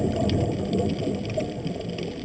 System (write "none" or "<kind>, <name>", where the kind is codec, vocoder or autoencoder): none